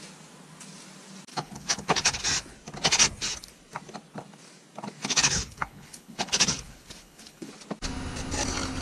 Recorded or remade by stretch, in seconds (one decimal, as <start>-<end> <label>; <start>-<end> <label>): 0.0-1.3 recorded; 1.3-2.2 remade; 2.2-5.0 recorded; 5.0-7.5 remade; 7.5-8.8 recorded